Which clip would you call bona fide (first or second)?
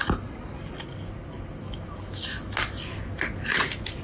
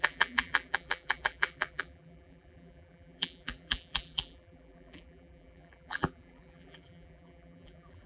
first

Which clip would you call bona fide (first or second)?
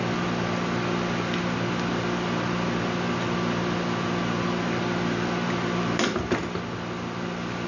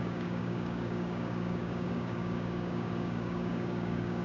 first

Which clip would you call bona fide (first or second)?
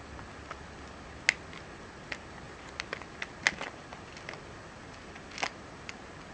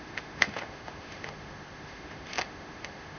first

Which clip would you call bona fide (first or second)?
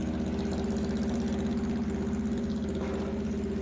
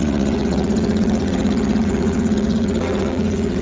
first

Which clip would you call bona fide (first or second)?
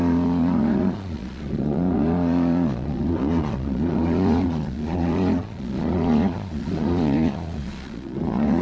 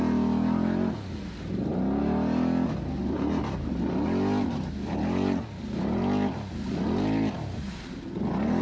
second